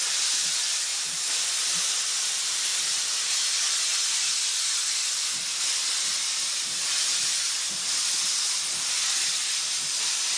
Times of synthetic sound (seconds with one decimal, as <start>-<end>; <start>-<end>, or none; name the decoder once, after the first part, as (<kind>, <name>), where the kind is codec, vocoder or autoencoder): none